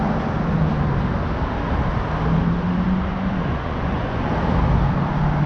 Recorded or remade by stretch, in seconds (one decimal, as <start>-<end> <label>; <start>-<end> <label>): 0.0-3.5 recorded; 3.5-4.3 remade; 4.3-5.5 recorded